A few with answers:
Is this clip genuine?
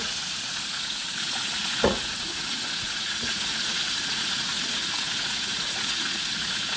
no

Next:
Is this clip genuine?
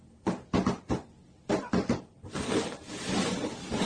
yes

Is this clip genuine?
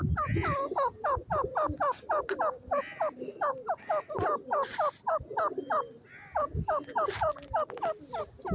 yes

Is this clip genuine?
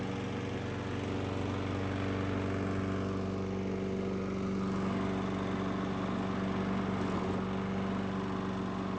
yes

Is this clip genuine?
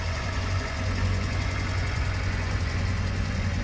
no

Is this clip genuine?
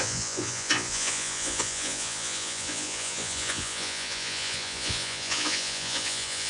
no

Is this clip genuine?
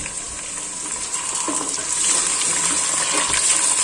yes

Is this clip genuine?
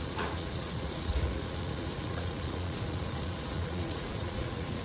no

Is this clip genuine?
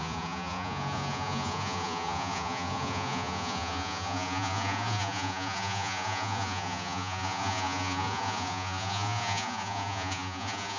no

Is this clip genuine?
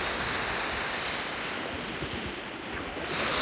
yes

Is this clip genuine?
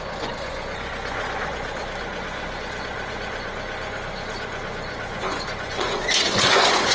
no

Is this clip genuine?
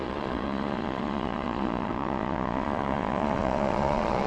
no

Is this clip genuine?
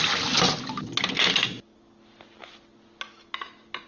yes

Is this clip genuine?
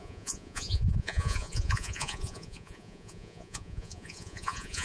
no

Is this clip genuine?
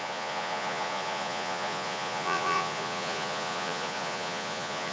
no